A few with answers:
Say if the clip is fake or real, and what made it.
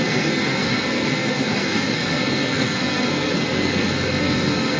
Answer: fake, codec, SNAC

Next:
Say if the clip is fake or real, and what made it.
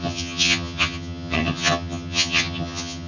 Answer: fake, vocoder, HiFi-GAN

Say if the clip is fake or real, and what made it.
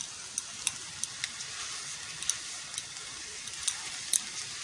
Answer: real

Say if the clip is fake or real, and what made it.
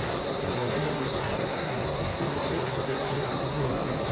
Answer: fake, codec, SNAC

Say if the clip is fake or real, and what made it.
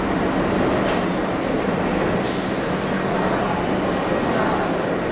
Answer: real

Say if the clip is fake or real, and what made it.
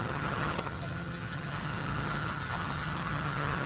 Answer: fake, vocoder, HiFi-GAN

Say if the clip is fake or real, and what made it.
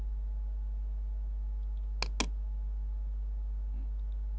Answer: real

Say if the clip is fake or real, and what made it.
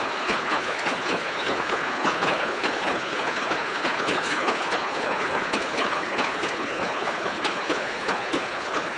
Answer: fake, codec, HILCodec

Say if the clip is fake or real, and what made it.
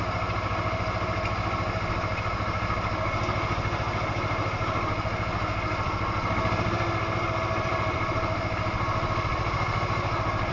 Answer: fake, vocoder, BigVGAN v2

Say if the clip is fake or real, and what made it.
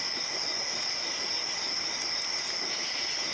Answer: real